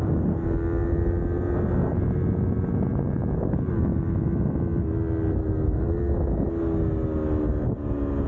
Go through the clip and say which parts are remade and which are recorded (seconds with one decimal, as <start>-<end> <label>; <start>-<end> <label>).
0.0-8.3 recorded